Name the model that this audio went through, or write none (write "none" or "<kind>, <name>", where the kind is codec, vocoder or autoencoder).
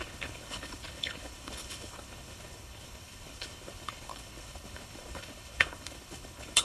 codec, HILCodec